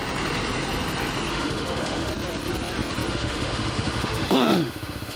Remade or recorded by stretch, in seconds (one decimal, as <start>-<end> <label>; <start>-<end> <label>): 0.0-1.3 recorded; 1.3-2.1 remade; 2.1-3.1 recorded; 3.1-5.2 remade